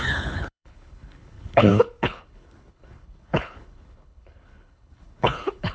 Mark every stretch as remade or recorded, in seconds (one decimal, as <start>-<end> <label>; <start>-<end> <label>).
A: 0.0-5.7 remade